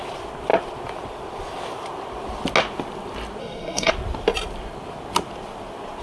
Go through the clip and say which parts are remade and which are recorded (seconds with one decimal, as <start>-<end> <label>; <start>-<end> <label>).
0.0-3.4 recorded; 3.4-3.9 remade; 3.9-6.0 recorded